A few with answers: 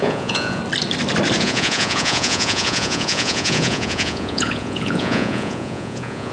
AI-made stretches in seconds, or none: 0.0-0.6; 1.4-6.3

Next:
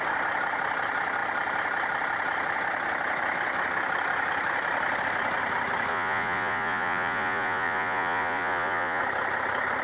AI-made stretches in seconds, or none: 5.9-9.0

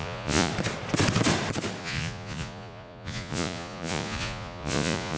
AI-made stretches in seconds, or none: 0.0-0.5; 1.8-5.2

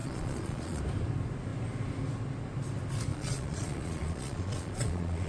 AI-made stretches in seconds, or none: 0.0-0.8; 3.1-5.3

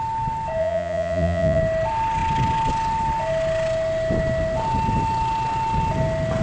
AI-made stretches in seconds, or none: 0.6-1.6

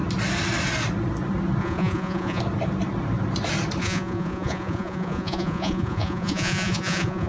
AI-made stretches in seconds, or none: 1.6-2.4; 3.8-7.3